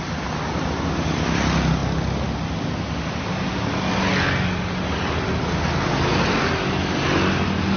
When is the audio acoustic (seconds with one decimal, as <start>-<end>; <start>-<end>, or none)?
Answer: 0.0-7.8